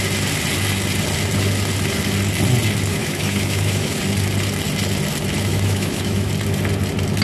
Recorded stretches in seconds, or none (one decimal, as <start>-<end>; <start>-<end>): 0.0-2.9; 4.0-5.5; 6.3-7.2